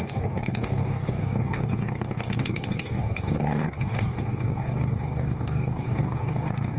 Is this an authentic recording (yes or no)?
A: no